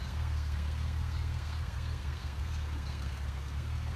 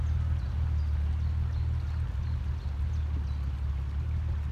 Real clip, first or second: second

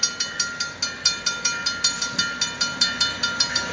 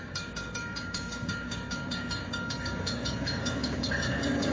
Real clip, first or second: first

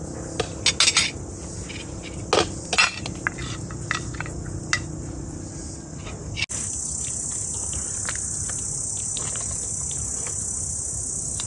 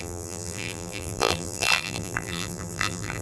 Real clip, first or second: first